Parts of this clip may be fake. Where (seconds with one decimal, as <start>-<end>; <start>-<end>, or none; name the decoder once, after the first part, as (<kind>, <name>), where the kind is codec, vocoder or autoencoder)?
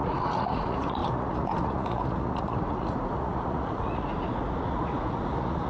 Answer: 0.0-5.7 (vocoder, Vocos)